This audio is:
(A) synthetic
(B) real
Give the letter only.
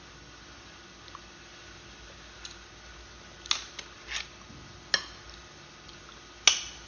B